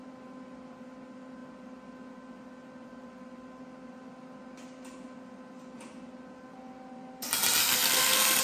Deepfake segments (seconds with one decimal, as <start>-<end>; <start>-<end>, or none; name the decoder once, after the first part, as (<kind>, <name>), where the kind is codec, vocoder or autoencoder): 7.6-8.4 (codec, SNAC)